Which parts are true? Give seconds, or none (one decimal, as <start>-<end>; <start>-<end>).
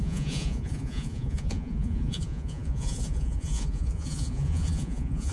none